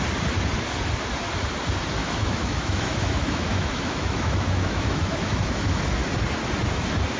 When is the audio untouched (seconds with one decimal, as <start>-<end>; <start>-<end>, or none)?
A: 0.0-2.0; 5.8-7.2